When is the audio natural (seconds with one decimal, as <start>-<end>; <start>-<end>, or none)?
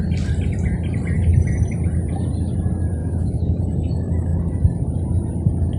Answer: 0.0-3.0; 3.6-5.8